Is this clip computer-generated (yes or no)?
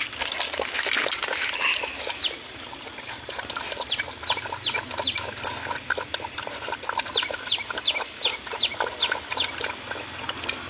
no